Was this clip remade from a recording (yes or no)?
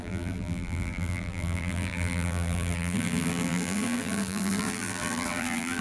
yes